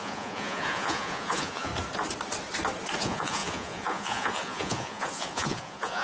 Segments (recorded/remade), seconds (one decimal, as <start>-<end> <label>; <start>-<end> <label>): 0.0-1.7 remade; 1.7-3.0 recorded; 3.0-6.0 remade